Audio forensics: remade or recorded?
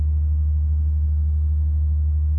recorded